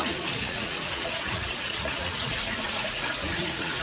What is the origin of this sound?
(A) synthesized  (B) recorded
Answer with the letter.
A